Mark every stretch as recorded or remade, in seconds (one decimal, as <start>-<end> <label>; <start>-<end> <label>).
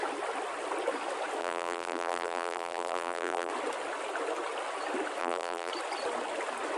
0.0-1.4 recorded; 1.4-3.5 remade; 3.5-5.2 recorded; 5.2-5.7 remade; 5.7-6.8 recorded